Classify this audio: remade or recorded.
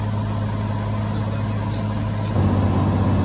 recorded